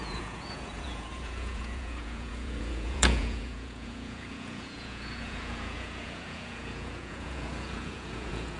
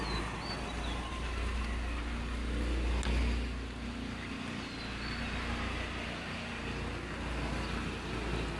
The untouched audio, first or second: second